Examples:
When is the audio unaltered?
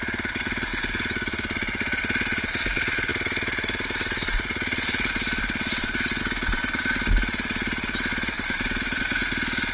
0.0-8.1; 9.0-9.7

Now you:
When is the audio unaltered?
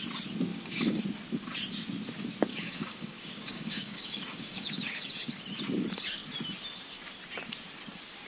0.0-0.5; 1.0-2.5; 5.0-8.3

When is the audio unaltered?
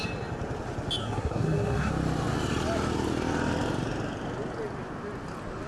0.0-1.0; 1.9-5.7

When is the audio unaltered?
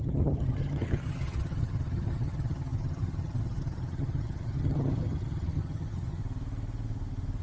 6.2-7.4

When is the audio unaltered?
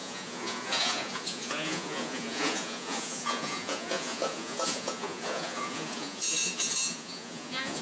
none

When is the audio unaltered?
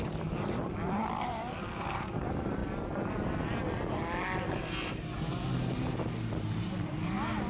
2.6-6.6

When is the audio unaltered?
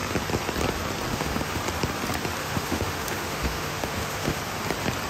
0.0-1.1; 1.6-2.4; 4.4-5.1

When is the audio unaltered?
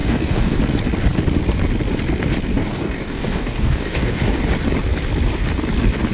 0.6-2.5; 4.4-6.1